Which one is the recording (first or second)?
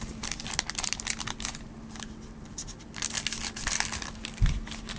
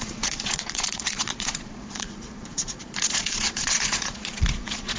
first